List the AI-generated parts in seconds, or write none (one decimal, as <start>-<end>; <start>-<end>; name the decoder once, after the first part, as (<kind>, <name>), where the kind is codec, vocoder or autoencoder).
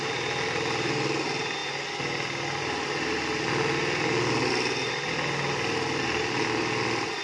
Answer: none